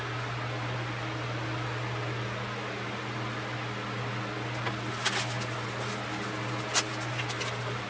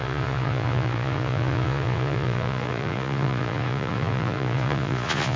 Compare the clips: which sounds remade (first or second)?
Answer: second